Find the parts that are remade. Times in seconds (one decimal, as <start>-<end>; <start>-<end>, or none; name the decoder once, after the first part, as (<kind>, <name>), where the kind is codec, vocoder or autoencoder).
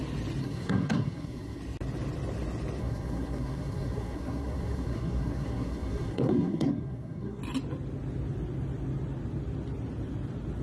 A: 0.4-1.6 (codec, SNAC); 2.8-7.4